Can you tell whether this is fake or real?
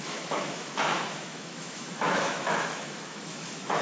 fake